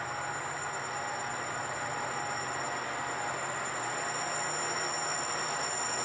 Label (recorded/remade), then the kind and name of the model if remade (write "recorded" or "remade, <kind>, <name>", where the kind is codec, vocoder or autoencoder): recorded